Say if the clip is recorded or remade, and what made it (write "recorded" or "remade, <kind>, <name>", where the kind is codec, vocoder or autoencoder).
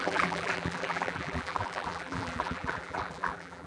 remade, vocoder, BigVGAN v2